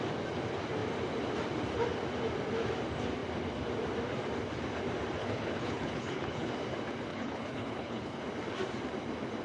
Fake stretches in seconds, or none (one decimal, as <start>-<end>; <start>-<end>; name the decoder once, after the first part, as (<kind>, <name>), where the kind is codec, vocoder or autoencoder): 5.2-6.5 (codec, HILCodec); 7.1-8.3